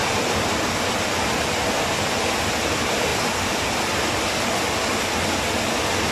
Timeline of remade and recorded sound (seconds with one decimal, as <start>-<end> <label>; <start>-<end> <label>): 0.0-6.1 recorded